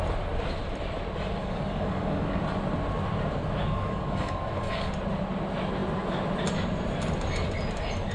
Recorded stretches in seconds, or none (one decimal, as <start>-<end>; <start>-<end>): 0.0-1.4; 2.4-3.6; 4.9-8.1